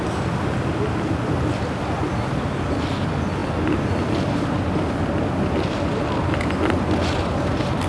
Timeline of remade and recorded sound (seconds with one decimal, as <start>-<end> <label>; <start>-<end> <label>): 0.0-7.9 recorded